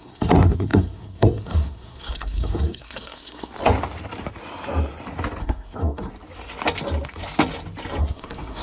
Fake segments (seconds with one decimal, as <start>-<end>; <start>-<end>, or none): 0.0-3.5; 5.4-6.1; 8.0-8.6